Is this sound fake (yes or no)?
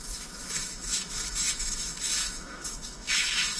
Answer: yes